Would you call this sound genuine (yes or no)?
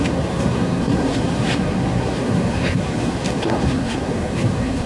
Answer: no